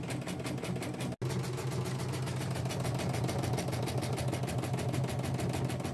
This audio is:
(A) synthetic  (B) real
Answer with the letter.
B